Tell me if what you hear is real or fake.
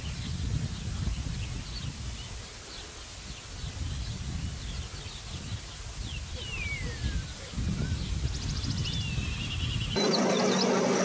real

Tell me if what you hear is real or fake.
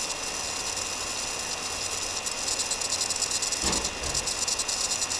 real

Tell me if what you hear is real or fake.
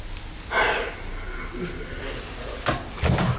real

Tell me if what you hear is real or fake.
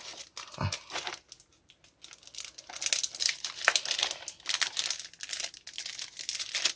real